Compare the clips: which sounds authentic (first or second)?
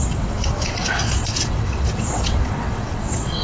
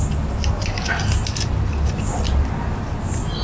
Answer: second